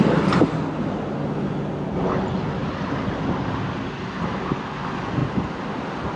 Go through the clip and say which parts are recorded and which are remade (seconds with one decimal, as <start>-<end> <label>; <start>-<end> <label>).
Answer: 0.0-6.2 recorded